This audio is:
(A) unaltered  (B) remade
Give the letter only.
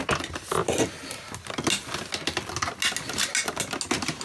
A